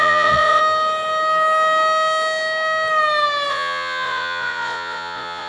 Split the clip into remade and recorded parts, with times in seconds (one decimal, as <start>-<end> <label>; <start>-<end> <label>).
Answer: 0.0-0.6 remade; 0.6-3.5 recorded; 3.5-5.5 remade